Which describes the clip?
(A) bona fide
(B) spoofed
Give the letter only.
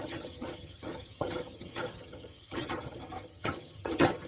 B